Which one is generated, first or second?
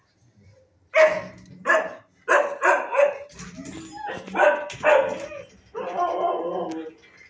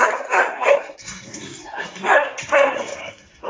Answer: second